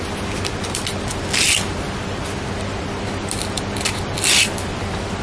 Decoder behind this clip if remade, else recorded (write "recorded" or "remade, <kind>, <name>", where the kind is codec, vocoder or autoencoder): recorded